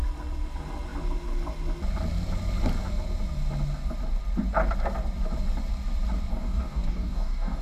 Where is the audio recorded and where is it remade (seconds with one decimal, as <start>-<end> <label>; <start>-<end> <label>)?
0.0-6.3 recorded; 6.3-7.6 remade

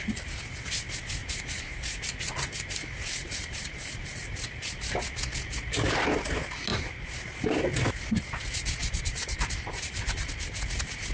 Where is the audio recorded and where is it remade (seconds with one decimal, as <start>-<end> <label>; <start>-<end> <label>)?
0.0-1.2 recorded; 1.2-4.4 remade; 4.4-6.7 recorded; 6.7-7.6 remade; 7.6-8.8 recorded; 8.8-10.3 remade; 10.3-11.1 recorded

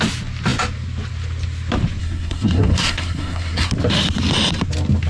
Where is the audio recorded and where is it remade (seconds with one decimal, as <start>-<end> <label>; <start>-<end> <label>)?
0.0-2.0 recorded; 2.0-3.7 remade; 3.7-5.1 recorded

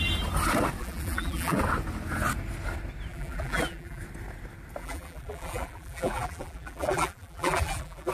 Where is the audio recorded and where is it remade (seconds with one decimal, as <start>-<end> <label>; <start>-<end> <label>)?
0.0-0.8 recorded; 0.8-1.6 remade; 1.6-3.1 recorded; 3.1-4.0 remade; 4.0-4.8 recorded; 4.8-8.1 remade

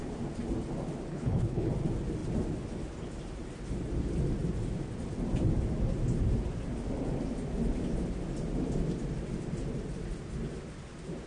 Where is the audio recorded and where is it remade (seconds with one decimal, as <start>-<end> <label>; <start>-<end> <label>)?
0.0-1.1 recorded; 1.1-1.7 remade; 1.7-11.3 recorded

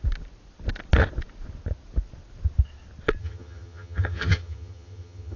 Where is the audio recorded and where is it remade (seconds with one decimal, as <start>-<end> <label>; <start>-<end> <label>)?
0.0-3.2 recorded; 3.2-5.4 remade

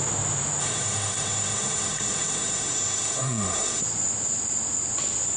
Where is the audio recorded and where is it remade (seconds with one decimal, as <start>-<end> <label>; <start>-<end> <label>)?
0.0-0.6 recorded; 0.6-3.8 remade; 3.8-5.4 recorded